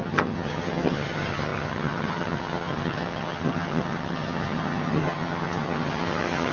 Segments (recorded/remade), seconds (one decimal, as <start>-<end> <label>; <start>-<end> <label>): 0.0-6.5 remade